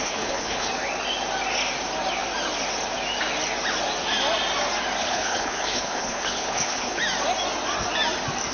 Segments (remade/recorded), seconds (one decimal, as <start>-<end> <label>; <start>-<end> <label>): 0.0-0.7 remade; 0.7-5.0 recorded; 5.0-7.0 remade; 7.0-8.5 recorded